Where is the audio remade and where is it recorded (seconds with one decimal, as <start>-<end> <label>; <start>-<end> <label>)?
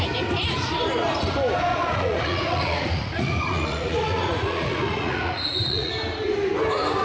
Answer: 0.0-1.7 recorded; 1.7-5.9 remade; 5.9-7.0 recorded